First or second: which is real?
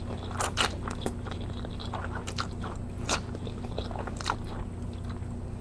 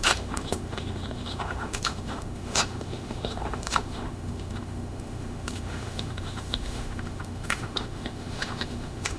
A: first